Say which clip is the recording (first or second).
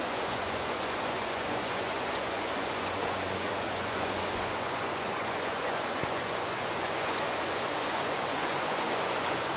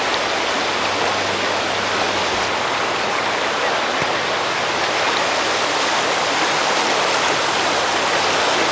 second